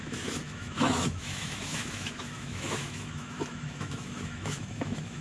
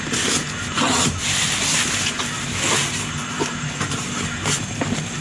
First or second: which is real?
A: second